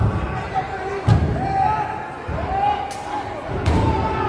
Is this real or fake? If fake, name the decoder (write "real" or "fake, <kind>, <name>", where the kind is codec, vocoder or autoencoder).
real